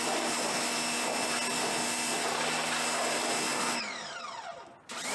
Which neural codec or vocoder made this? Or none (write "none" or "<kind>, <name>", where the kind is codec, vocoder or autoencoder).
none